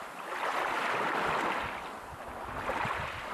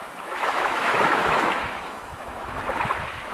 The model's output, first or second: second